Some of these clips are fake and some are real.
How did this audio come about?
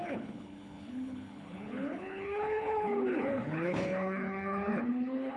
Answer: fake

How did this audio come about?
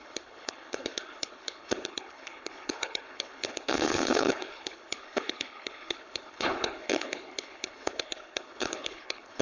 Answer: fake